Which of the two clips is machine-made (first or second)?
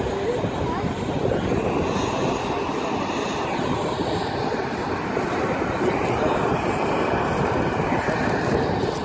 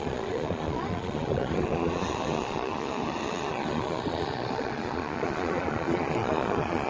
second